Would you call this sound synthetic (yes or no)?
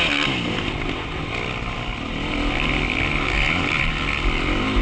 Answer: no